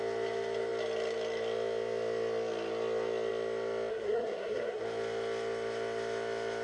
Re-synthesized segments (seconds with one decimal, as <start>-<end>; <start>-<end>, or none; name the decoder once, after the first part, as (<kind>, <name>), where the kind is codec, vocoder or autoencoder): 3.9-4.8 (codec, SNAC)